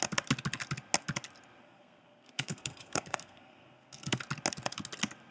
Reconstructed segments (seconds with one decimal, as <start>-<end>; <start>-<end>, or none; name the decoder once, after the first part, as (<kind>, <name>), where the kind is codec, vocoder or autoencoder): 1.6-4.2 (codec, SNAC)